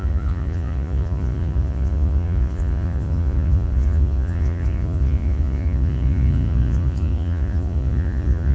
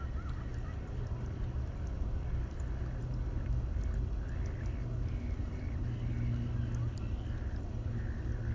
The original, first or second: second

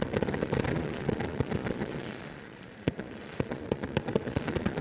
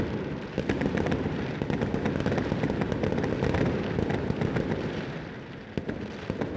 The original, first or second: second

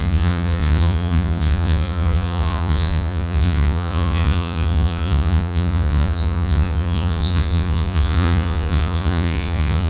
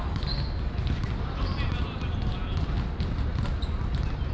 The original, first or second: second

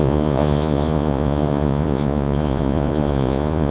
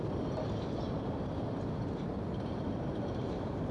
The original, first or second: second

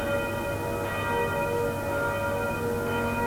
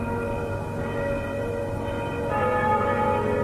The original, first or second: first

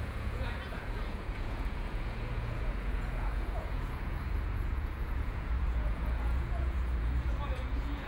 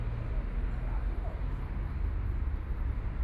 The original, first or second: second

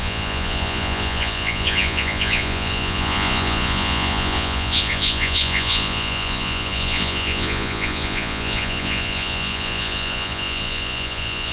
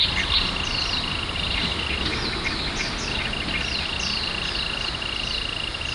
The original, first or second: second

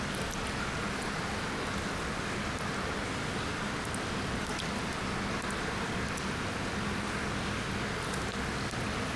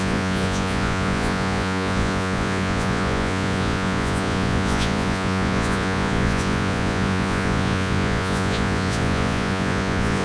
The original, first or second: first